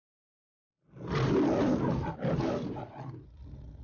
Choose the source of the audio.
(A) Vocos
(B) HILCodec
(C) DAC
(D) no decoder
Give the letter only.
D